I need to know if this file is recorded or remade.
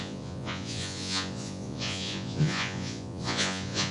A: remade